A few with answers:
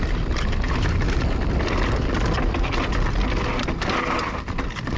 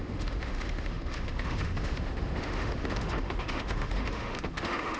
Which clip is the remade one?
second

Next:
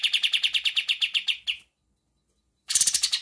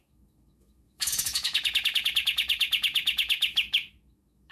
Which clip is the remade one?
second